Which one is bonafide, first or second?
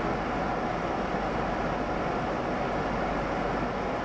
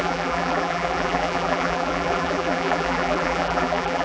first